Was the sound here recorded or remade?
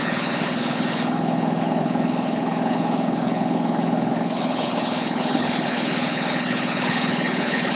remade